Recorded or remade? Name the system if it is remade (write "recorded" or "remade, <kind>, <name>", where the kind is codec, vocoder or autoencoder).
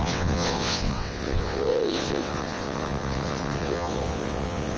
remade, vocoder, WaveNeXt